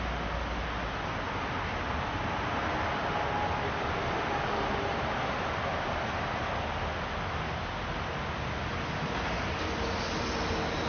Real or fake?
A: real